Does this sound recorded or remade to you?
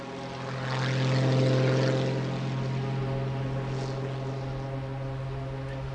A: recorded